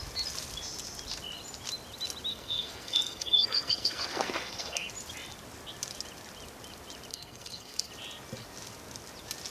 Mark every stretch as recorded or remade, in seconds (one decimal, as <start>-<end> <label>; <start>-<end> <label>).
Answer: 0.0-2.3 recorded; 2.3-4.9 remade; 4.9-7.1 recorded; 7.1-7.9 remade; 7.9-9.5 recorded